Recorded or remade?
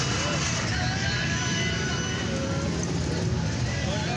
recorded